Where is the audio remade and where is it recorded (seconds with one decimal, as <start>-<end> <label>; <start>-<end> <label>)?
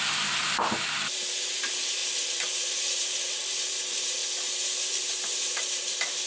0.0-6.3 remade